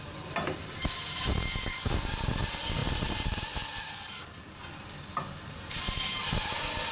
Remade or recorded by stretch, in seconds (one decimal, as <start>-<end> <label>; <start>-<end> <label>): 0.0-6.9 recorded